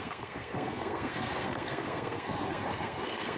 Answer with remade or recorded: remade